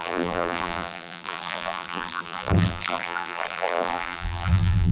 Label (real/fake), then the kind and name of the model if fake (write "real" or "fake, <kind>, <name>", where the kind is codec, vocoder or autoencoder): fake, vocoder, BigVGAN v2